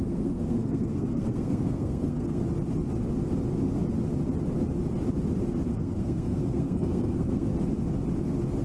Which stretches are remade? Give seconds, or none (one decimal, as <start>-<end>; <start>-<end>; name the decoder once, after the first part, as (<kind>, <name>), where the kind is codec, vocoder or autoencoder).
0.0-2.4 (codec, SNAC); 5.7-7.5